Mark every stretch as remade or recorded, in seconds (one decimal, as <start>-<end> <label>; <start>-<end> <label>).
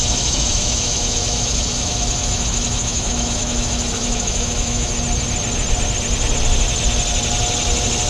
0.0-4.9 remade; 4.9-8.1 recorded